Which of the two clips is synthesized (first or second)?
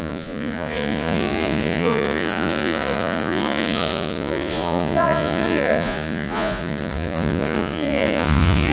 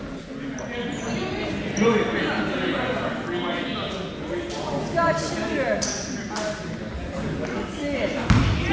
first